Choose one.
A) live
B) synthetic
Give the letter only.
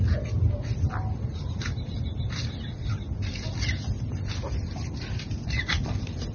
B